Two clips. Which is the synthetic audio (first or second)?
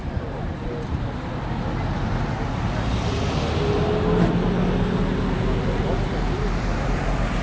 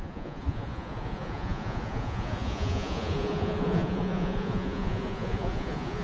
second